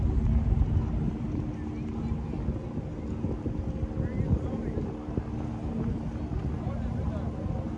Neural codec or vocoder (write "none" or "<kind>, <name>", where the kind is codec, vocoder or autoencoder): none